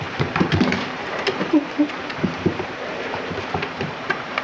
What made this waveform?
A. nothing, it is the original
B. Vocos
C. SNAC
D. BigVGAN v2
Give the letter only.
D